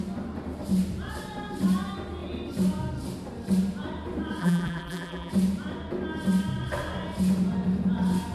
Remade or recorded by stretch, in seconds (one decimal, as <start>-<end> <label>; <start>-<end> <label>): 0.0-4.4 recorded; 4.4-5.3 remade; 5.3-8.3 recorded

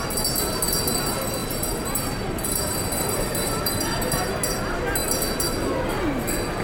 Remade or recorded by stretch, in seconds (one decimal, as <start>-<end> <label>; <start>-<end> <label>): 0.0-1.4 recorded; 1.4-4.3 remade; 4.3-6.6 recorded

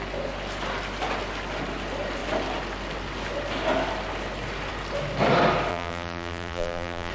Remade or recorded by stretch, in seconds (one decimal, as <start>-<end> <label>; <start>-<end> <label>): 0.0-5.7 recorded; 5.7-7.1 remade

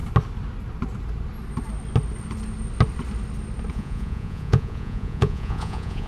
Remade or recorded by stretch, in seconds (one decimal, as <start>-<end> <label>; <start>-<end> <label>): 0.0-3.7 recorded; 3.7-6.1 remade